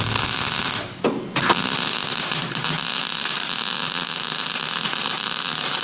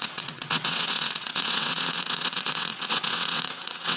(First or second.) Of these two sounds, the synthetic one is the second